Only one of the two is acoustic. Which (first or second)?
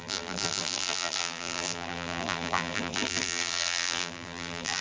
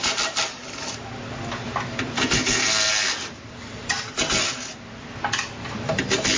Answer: second